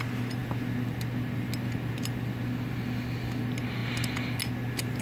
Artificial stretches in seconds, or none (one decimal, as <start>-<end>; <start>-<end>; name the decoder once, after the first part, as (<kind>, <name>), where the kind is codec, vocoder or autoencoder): none